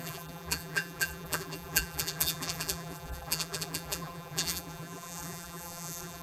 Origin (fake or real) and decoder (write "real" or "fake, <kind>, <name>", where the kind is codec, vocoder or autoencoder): fake, vocoder, BigVGAN v2